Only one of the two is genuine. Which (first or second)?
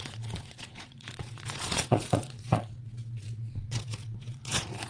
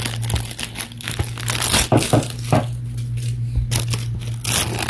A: second